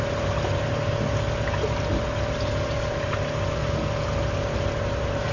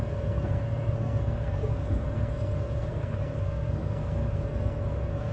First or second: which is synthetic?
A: second